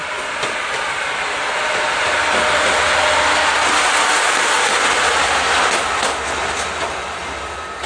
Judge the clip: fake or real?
real